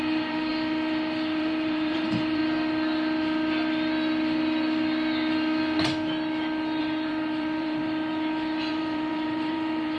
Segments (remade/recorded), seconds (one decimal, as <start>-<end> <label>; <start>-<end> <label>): 0.0-0.5 remade; 0.5-1.4 recorded; 1.4-2.4 remade; 2.4-6.8 recorded; 6.8-7.8 remade; 7.8-8.7 recorded; 8.7-10.0 remade

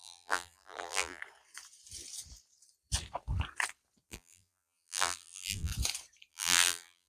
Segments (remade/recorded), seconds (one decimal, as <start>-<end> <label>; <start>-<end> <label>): 0.0-1.2 remade; 1.2-4.1 recorded; 4.1-5.7 remade; 5.7-6.3 recorded; 6.3-7.1 remade

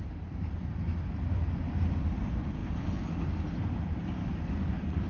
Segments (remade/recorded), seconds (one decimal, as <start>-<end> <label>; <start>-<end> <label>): 0.0-4.2 recorded; 4.2-5.1 remade

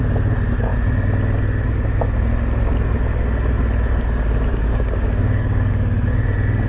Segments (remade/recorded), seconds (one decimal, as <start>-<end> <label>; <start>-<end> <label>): 0.0-4.5 recorded; 4.5-5.7 remade; 5.7-6.7 recorded

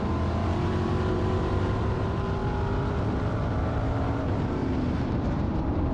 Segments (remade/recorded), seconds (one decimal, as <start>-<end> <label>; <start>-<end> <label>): 0.0-2.4 remade; 2.4-3.7 recorded; 3.7-5.9 remade

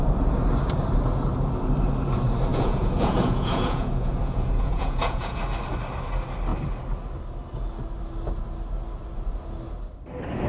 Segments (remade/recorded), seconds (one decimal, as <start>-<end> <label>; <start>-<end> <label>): 0.0-2.5 recorded; 2.5-5.4 remade; 5.4-10.5 recorded

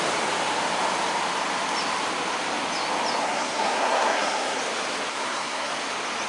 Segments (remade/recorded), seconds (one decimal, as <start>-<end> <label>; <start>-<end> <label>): 0.0-3.2 recorded; 3.2-4.6 remade; 4.6-5.1 recorded; 5.1-5.7 remade; 5.7-6.3 recorded

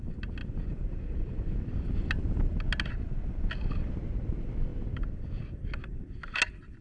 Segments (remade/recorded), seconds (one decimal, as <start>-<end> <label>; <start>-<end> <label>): 0.0-6.8 recorded